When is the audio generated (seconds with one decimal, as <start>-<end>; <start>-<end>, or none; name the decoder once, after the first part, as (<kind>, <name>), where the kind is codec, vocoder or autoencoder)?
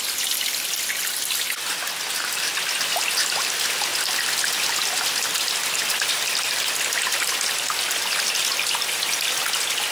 none